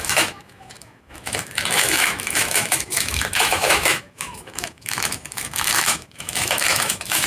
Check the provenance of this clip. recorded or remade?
remade